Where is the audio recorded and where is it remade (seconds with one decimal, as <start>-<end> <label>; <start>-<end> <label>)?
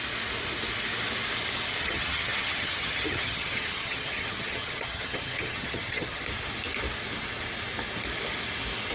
0.0-1.8 recorded; 1.8-6.2 remade; 6.2-8.9 recorded